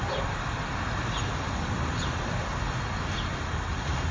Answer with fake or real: fake